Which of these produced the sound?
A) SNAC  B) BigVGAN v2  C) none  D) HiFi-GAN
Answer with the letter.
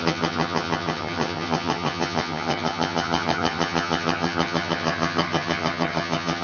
D